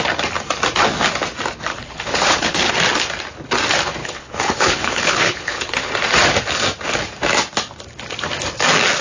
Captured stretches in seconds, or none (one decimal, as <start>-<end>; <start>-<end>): 0.0-1.7; 2.7-4.0; 5.9-9.0

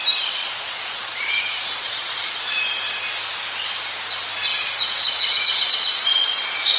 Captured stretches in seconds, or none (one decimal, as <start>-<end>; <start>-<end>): 0.0-0.4; 2.6-4.5

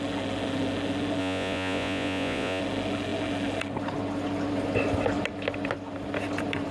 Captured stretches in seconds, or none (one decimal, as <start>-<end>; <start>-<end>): 0.0-1.2; 2.6-6.7

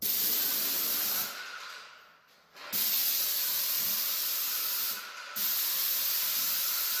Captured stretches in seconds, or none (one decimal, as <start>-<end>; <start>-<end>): 0.0-7.0